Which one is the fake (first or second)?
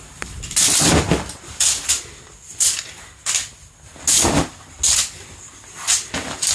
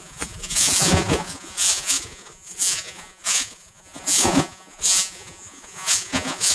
second